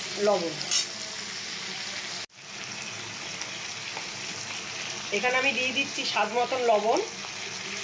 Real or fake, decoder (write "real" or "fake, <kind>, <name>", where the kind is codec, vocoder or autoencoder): real